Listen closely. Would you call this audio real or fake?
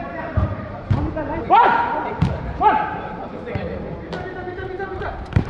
fake